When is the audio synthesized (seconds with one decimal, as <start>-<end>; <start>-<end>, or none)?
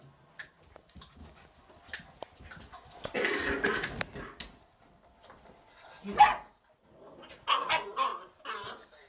none